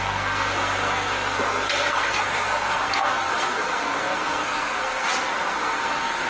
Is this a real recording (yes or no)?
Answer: no